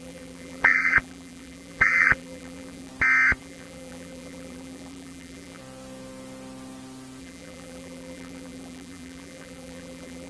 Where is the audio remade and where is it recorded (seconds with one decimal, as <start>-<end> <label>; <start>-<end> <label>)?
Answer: 0.0-2.9 remade; 2.9-3.4 recorded; 3.4-5.6 remade; 5.6-7.2 recorded; 7.2-10.3 remade